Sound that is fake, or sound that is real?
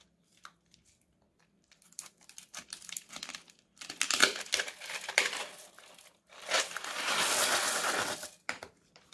fake